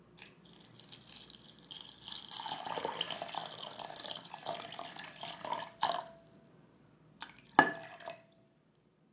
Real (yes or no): yes